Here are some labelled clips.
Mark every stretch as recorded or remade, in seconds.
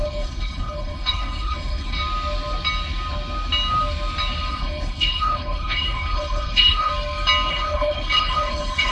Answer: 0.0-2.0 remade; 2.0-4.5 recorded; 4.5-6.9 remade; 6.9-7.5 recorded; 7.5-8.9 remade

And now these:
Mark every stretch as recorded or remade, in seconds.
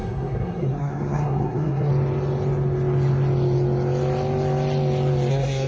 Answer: 0.0-1.9 remade; 1.9-5.3 recorded; 5.3-5.7 remade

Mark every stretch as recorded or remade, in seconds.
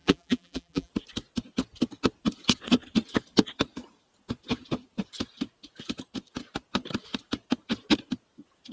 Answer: 0.0-0.9 remade; 0.9-8.7 recorded